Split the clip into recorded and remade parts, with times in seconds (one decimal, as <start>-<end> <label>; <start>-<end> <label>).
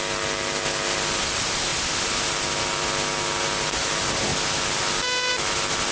0.0-1.7 remade; 1.7-2.6 recorded; 2.6-5.9 remade